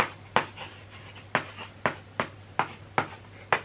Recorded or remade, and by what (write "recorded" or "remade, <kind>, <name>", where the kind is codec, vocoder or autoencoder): recorded